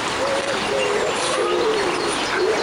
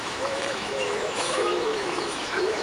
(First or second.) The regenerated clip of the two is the second